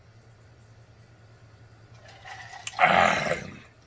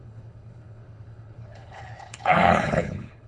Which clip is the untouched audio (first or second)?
first